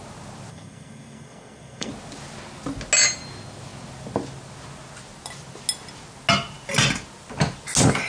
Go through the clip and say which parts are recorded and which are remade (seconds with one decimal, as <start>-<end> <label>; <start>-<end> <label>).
0.0-0.5 recorded; 0.5-1.9 remade; 1.9-8.1 recorded